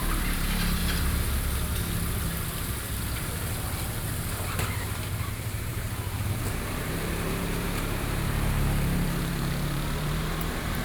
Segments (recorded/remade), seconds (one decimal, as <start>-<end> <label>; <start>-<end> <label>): 0.0-0.8 remade; 0.8-5.3 recorded; 5.3-10.8 remade